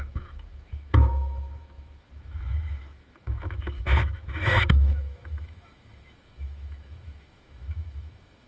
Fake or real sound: fake